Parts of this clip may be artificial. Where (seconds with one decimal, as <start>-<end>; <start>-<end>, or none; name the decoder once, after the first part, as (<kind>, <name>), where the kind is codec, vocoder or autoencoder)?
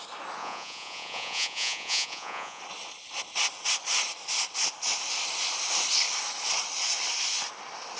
0.4-2.6 (vocoder, Vocos)